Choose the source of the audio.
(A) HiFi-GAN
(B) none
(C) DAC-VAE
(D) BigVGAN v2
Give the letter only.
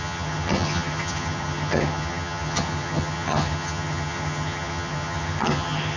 A